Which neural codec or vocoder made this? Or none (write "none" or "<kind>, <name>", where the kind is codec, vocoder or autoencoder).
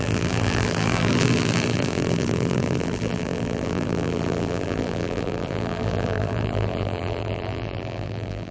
vocoder, BigVGAN v2